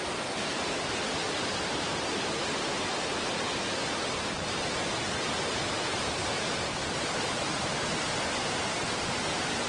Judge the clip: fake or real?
real